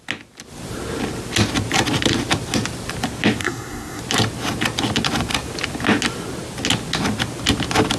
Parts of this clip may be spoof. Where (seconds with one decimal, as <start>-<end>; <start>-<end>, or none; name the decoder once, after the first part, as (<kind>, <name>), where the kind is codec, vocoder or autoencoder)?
3.4-4.0 (codec, SNAC)